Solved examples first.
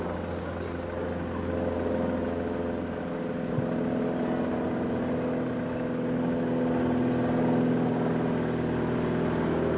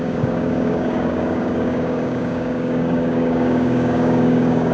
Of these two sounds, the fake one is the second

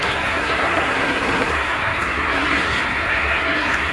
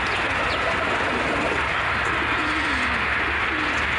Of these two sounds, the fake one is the first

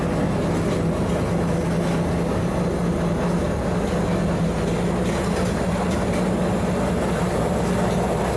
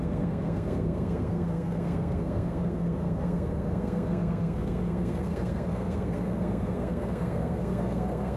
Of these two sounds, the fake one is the second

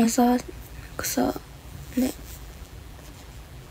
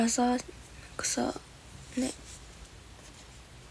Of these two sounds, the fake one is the first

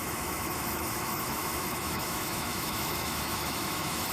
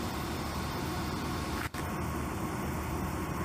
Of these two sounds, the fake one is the first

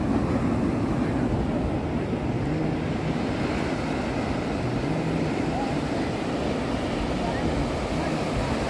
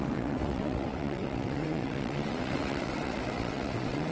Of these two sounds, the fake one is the second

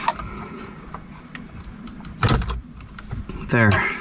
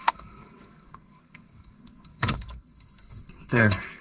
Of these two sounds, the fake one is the second